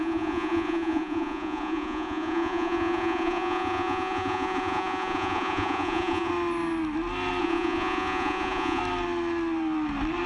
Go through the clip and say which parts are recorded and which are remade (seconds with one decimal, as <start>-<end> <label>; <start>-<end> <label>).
0.0-6.3 remade; 6.3-7.4 recorded; 7.4-8.8 remade; 8.8-10.3 recorded